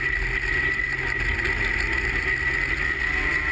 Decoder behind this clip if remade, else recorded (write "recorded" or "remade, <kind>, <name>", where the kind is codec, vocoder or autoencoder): recorded